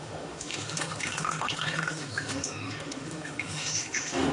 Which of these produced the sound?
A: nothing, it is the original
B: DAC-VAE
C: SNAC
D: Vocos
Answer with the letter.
B